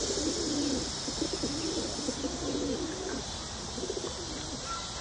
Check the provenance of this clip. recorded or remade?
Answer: recorded